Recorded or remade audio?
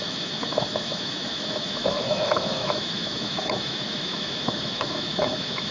remade